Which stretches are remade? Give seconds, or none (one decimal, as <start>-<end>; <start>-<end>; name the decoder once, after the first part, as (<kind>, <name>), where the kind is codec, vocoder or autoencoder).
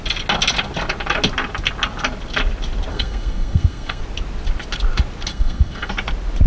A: 2.9-4.0 (codec, SNAC); 5.3-5.9